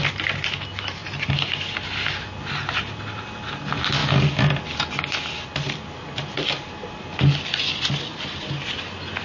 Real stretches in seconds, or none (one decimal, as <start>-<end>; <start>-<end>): 0.0-9.2